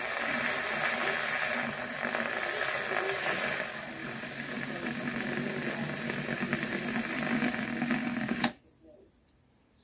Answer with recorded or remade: recorded